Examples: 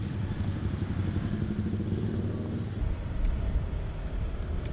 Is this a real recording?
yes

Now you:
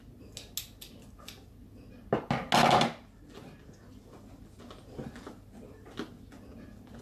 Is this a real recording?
yes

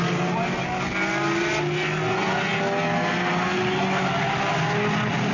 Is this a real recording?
yes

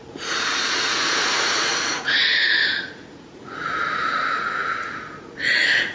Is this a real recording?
no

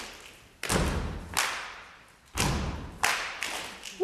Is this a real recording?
yes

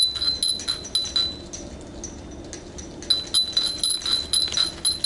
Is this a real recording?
yes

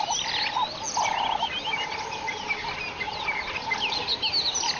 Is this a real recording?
yes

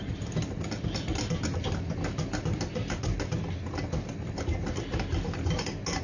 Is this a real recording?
yes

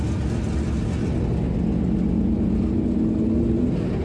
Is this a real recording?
yes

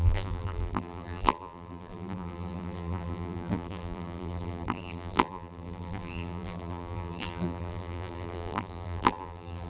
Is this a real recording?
no